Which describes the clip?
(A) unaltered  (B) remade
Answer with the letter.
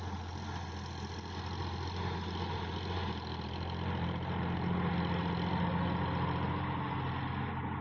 A